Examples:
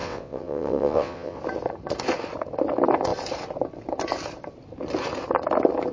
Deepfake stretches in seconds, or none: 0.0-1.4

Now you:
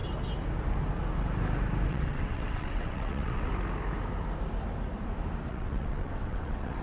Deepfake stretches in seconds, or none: 1.9-3.5; 5.5-6.8

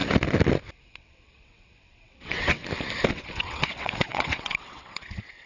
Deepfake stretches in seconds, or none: 0.9-2.6; 3.1-5.5